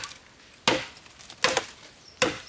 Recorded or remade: recorded